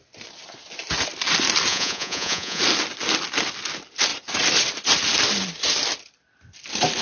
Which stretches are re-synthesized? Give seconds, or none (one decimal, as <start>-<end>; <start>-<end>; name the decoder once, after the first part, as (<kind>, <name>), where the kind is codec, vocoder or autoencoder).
1.7-2.6 (vocoder, Vocos)